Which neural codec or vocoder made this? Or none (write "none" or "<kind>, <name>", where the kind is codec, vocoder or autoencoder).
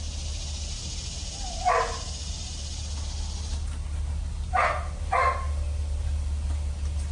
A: none